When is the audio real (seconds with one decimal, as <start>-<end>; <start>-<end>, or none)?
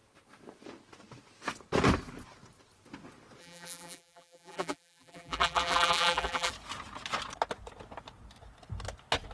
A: 0.0-3.4; 6.5-9.3